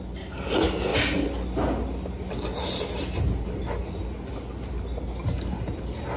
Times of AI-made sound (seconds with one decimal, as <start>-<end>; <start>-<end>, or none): none